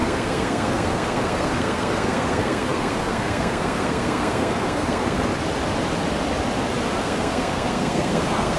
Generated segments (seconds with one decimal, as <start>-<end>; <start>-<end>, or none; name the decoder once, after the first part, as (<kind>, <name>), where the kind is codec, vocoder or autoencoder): 0.0-5.3 (codec, SNAC); 7.0-8.6